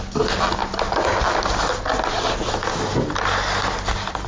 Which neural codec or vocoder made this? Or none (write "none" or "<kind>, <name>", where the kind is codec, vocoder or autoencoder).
none